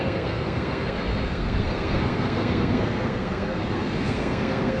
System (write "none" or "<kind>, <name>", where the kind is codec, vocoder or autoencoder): codec, SNAC